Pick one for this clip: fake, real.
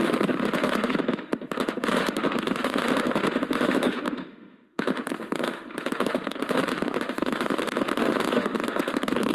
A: fake